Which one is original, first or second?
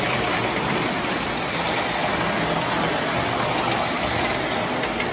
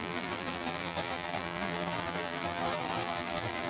first